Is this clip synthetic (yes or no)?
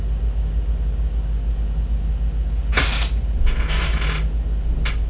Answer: no